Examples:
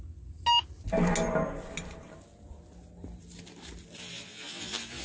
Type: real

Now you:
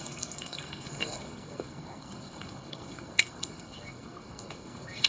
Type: fake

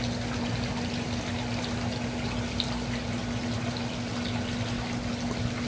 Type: real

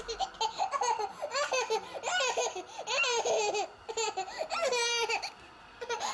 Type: real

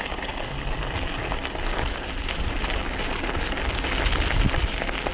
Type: real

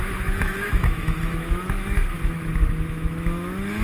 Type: fake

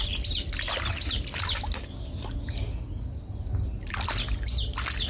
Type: real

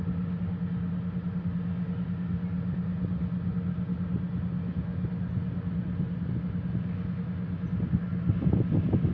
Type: real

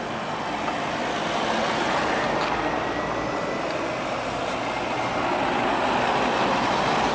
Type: real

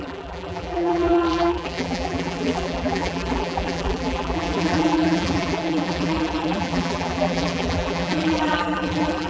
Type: fake